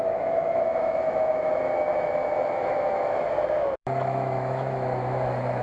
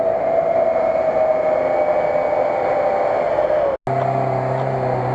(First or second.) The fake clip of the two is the first